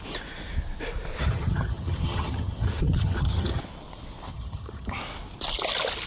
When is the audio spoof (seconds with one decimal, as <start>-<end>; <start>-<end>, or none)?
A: 1.2-3.6; 4.3-5.0